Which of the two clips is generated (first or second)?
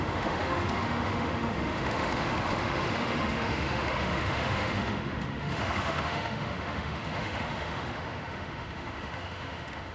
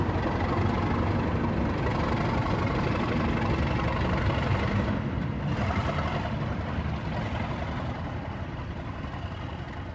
first